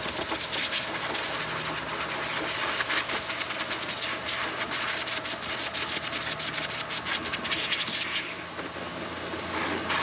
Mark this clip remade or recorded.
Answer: recorded